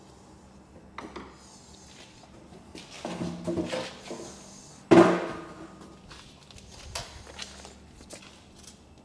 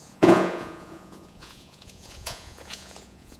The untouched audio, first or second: first